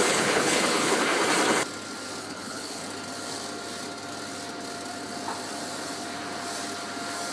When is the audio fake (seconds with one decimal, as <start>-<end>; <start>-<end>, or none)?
0.0-1.2; 2.2-2.8